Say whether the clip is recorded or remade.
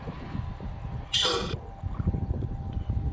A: recorded